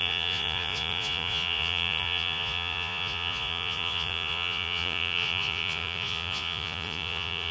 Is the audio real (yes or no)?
no